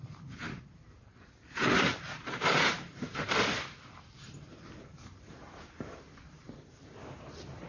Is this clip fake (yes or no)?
yes